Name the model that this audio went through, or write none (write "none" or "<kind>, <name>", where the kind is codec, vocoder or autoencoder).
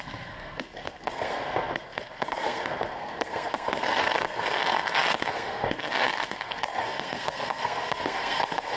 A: codec, SNAC